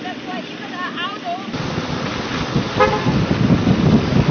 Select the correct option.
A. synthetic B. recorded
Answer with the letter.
B